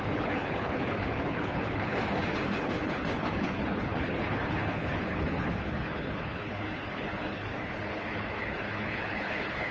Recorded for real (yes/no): no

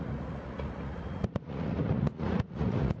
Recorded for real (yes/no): no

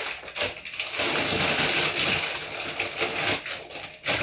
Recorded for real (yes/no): yes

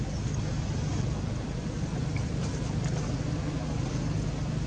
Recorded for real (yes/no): yes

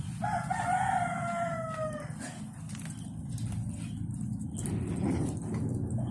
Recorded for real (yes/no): yes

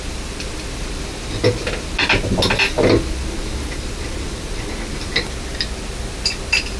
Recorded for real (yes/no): yes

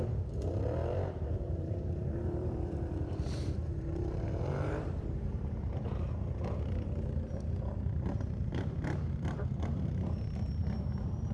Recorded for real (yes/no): no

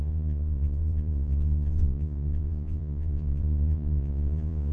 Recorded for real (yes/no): no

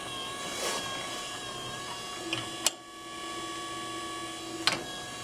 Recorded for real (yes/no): yes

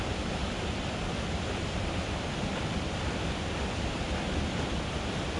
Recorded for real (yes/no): no